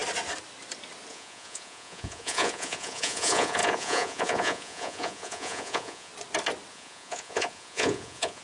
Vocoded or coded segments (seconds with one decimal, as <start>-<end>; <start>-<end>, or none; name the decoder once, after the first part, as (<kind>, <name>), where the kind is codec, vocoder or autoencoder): 1.1-6.1 (vocoder, Vocos); 6.7-8.4